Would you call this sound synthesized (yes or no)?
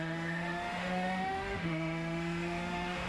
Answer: yes